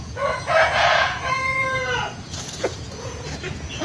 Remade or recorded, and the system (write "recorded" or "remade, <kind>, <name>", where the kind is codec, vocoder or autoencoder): remade, vocoder, Vocos